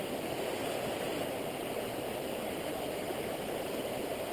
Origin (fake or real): real